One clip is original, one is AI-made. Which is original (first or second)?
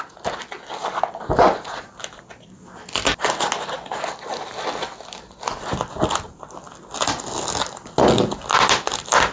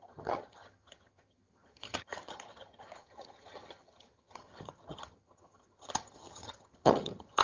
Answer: first